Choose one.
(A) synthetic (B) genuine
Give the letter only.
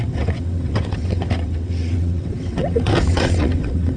A